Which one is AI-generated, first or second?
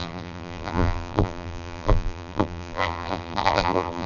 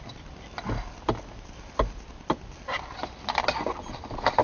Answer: first